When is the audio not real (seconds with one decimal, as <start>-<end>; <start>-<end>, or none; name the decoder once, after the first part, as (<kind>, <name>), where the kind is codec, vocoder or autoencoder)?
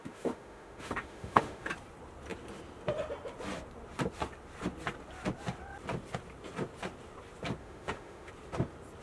0.0-1.7 (autoencoder, DAC-VAE); 7.6-8.3